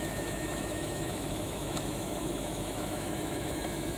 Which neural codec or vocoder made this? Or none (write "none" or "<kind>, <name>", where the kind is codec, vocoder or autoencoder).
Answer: autoencoder, DAC-VAE